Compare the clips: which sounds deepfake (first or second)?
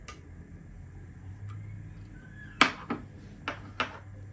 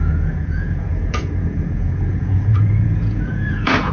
second